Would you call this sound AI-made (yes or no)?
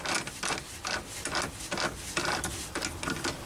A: no